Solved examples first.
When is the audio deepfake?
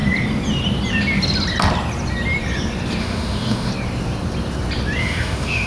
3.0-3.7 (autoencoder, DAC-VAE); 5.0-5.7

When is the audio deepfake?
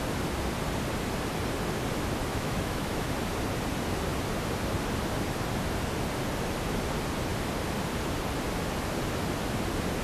2.3-3.1 (autoencoder, DAC-VAE)